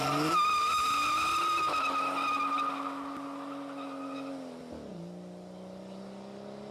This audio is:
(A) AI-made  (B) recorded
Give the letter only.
B